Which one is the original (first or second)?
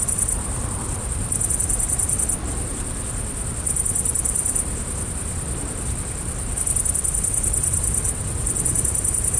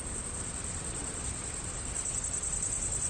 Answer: first